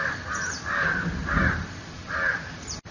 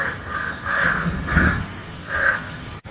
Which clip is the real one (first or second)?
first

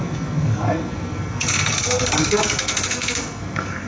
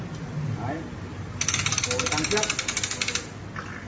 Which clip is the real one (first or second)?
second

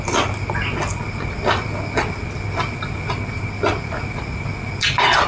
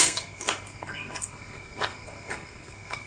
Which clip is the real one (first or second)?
first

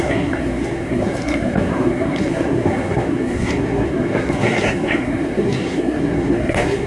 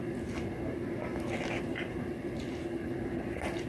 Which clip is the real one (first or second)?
second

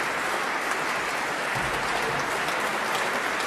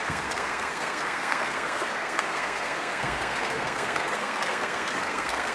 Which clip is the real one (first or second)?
first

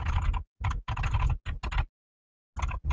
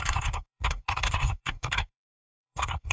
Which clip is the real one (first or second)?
first